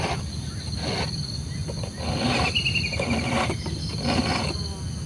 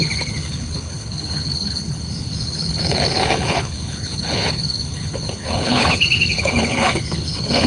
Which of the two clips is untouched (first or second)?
first